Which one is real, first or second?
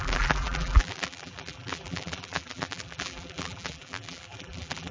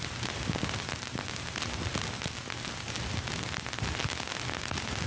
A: second